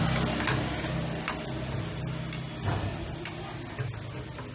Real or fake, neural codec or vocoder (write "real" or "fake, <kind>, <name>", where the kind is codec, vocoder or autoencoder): real